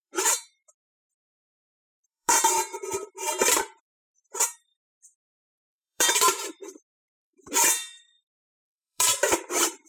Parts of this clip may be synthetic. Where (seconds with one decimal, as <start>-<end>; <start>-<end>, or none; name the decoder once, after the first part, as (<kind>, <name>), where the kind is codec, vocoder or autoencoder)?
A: 0.0-9.9 (vocoder, BigVGAN v2)